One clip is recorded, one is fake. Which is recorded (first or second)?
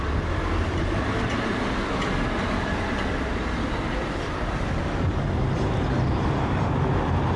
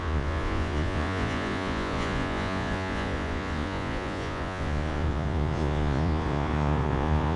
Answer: first